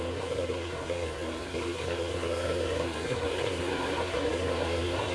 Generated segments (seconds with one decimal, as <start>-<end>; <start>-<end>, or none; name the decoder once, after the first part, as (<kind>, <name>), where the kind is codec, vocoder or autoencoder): 0.0-5.1 (codec, SNAC)